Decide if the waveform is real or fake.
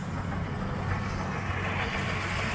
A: real